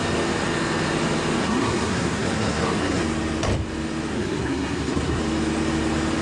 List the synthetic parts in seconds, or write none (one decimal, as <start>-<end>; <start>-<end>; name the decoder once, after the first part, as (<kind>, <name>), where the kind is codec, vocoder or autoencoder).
1.4-3.0 (codec, SNAC); 4.1-5.2